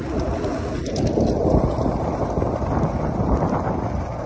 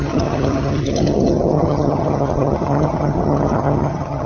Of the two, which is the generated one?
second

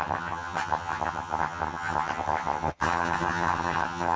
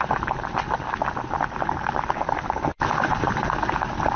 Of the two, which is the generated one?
first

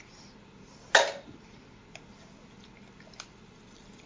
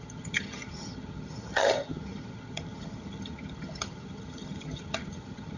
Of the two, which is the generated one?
second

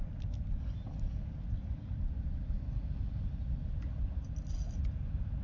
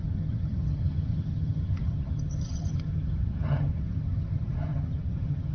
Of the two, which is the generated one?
second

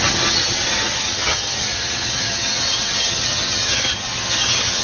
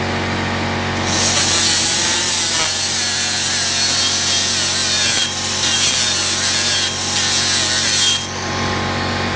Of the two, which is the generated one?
first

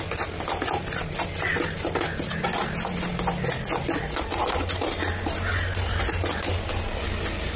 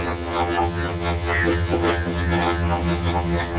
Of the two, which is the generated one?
second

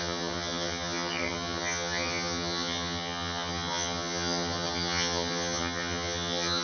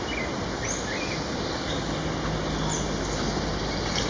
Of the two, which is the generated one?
first